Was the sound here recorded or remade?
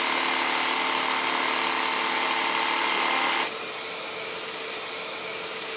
recorded